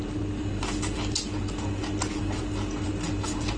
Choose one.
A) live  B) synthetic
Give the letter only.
A